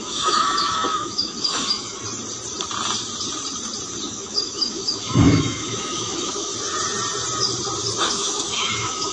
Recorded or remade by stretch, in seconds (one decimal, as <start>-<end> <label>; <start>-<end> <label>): 0.0-2.0 remade; 2.0-4.1 recorded; 4.1-6.5 remade; 6.5-8.0 recorded; 8.0-9.1 remade